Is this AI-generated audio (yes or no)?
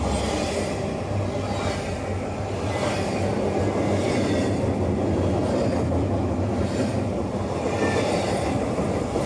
no